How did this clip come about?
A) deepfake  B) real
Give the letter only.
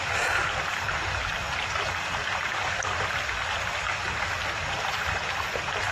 B